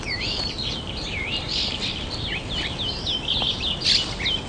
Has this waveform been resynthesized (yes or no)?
no